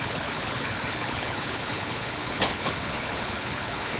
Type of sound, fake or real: fake